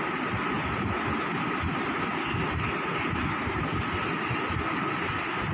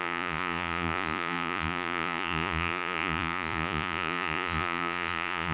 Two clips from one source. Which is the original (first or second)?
first